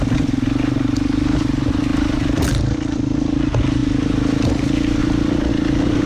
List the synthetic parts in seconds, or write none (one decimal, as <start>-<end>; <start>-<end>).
3.8-4.5; 5.0-5.5